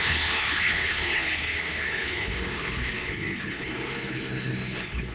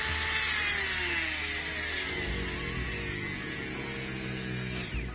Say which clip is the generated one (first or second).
first